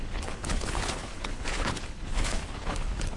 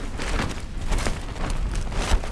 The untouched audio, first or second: second